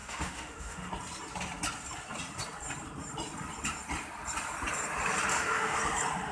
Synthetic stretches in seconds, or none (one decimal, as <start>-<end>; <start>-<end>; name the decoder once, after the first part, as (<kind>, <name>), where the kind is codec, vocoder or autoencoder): 0.0-0.9 (autoencoder, DAC-VAE); 5.3-5.8